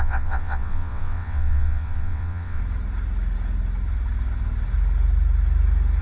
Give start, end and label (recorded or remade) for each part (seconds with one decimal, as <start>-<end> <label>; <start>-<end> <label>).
0.0-2.6 remade; 2.6-6.0 recorded